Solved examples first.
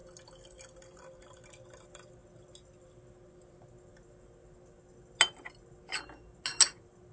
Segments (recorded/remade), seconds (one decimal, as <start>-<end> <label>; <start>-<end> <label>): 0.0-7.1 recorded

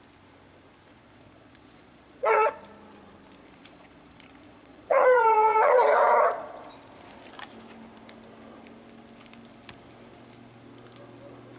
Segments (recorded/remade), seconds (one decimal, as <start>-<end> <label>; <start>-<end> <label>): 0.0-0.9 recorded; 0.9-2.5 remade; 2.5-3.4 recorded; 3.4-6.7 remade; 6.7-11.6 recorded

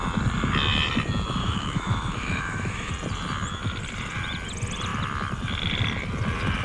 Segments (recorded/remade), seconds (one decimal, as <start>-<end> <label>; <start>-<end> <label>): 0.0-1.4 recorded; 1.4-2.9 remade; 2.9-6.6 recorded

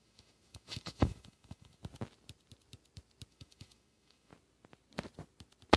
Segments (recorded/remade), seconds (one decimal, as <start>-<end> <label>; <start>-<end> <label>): 0.0-1.8 remade; 1.8-3.3 recorded; 3.3-4.3 remade; 4.3-5.8 recorded

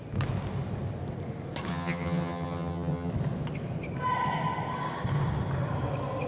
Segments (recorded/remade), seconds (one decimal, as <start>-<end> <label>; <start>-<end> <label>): 0.0-1.7 recorded; 1.7-3.1 remade; 3.1-6.3 recorded

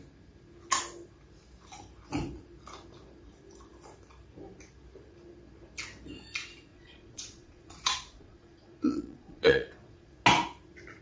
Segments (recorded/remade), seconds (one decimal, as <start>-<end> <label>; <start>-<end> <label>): 0.0-6.7 recorded; 6.7-10.1 remade; 10.1-11.0 recorded

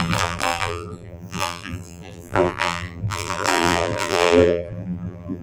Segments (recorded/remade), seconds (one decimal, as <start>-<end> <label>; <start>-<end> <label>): 0.0-5.4 remade

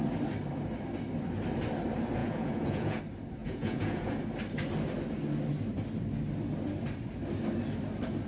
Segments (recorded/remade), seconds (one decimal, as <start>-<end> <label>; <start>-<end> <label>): 0.0-2.2 recorded; 2.2-3.0 remade; 3.0-3.4 recorded; 3.4-4.1 remade; 4.1-8.3 recorded